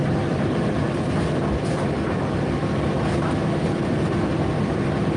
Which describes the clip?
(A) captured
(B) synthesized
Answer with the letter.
A